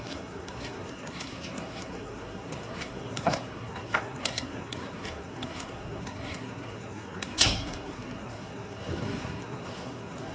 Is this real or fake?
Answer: fake